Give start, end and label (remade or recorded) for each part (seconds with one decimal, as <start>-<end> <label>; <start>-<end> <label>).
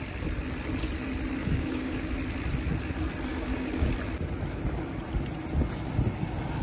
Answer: 0.0-1.4 recorded; 1.4-2.1 remade; 2.1-3.3 recorded; 3.3-3.9 remade; 3.9-6.6 recorded